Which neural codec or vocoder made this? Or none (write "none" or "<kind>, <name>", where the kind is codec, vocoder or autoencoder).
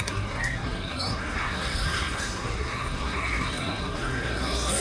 codec, SNAC